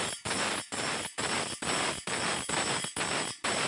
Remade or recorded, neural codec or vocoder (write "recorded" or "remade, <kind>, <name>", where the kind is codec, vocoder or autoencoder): recorded